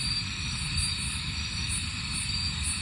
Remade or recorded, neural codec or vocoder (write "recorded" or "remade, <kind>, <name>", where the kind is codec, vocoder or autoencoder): recorded